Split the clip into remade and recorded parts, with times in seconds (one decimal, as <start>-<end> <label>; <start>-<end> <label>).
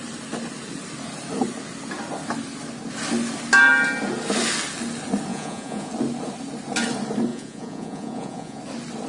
0.0-5.3 recorded; 5.3-5.9 remade; 5.9-7.3 recorded; 7.3-8.6 remade; 8.6-9.1 recorded